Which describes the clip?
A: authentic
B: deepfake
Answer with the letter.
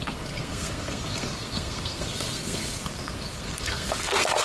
B